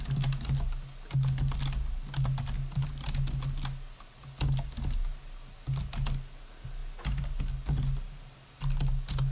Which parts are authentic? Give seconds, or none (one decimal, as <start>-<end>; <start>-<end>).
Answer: 0.0-9.3